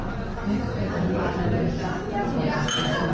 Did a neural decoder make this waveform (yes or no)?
no